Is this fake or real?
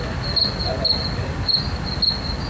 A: real